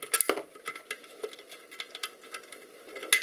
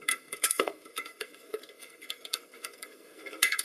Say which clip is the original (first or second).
first